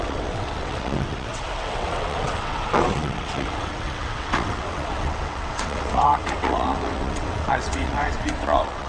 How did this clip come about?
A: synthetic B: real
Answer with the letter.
A